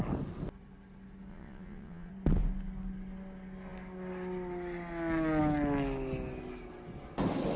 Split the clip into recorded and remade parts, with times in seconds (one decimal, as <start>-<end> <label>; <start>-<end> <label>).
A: 0.0-1.3 recorded; 1.3-2.1 remade; 2.1-7.6 recorded